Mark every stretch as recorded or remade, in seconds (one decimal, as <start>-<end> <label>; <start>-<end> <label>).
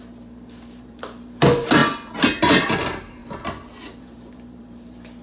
0.0-1.8 remade; 1.8-2.4 recorded; 2.4-3.2 remade; 3.2-4.0 recorded; 4.0-5.2 remade